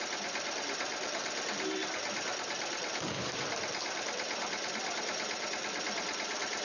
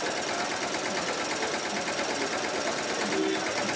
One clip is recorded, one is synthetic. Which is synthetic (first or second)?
first